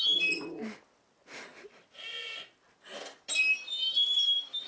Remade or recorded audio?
recorded